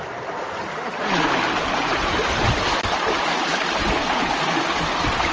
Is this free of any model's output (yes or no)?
yes